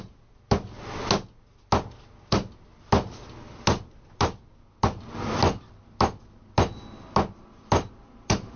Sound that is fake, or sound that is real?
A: real